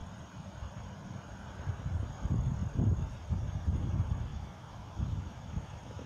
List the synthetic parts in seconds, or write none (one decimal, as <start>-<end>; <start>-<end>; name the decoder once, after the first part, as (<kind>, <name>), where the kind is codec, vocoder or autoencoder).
4.3-6.1 (autoencoder, DAC-VAE)